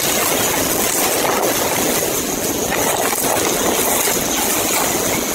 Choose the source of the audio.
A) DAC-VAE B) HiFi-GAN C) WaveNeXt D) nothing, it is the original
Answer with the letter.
D